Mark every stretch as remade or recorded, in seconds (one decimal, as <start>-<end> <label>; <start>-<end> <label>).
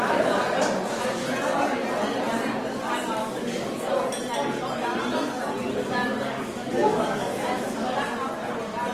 0.0-3.2 recorded; 3.2-3.9 remade; 3.9-5.6 recorded; 5.6-8.0 remade; 8.0-8.9 recorded